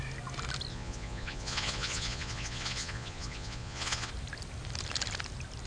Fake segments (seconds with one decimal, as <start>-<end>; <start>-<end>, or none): 0.7-4.1